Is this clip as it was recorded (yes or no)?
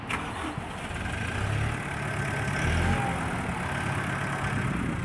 yes